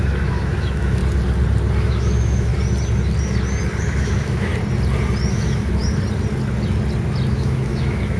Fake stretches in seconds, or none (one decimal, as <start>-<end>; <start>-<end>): 0.0-1.0; 1.8-2.5; 3.8-4.5; 5.3-5.8; 7.3-8.2